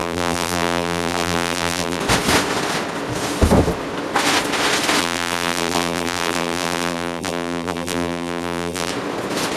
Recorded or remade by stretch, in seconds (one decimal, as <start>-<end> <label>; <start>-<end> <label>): 0.0-2.0 remade; 2.0-5.0 recorded; 5.0-8.9 remade; 8.9-9.6 recorded